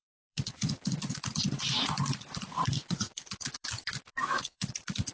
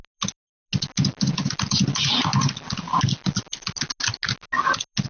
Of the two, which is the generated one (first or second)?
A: first